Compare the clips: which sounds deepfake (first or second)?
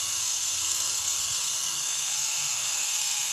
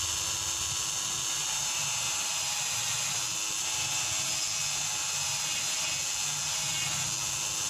first